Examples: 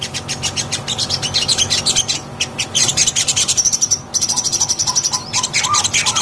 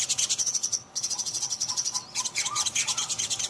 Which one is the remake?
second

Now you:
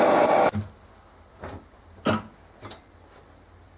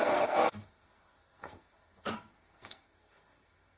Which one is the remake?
second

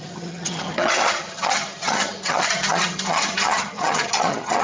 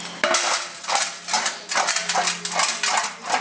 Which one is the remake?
first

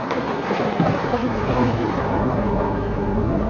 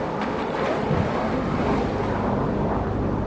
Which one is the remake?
first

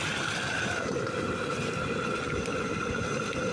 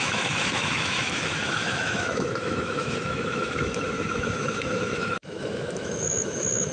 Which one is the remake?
second